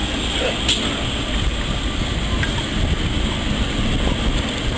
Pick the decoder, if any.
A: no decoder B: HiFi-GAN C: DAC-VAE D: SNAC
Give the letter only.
A